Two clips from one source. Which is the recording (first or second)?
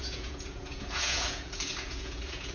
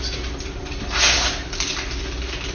second